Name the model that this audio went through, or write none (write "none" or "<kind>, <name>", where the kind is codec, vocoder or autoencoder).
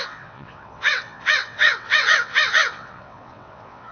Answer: vocoder, WaveNeXt